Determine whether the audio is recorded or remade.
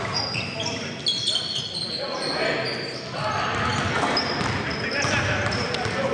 recorded